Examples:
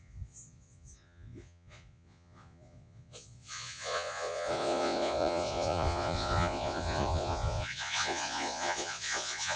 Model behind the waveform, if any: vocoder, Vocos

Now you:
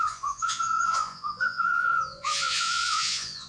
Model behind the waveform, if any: vocoder, Vocos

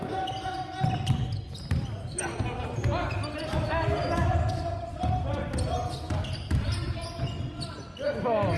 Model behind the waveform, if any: none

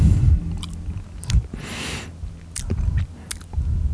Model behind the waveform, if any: none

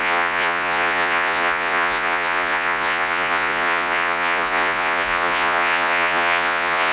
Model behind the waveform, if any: vocoder, Vocos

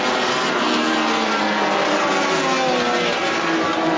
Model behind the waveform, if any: none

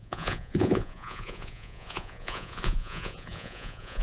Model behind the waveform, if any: vocoder, Vocos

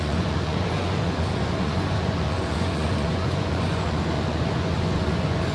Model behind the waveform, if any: vocoder, Vocos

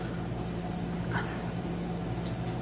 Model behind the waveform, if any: none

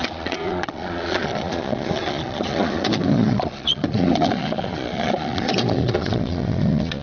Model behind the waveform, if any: vocoder, Vocos